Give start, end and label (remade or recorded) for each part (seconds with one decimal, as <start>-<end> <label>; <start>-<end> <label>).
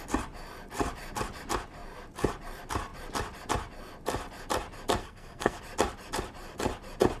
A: 0.0-5.0 recorded; 5.0-5.6 remade; 5.6-7.2 recorded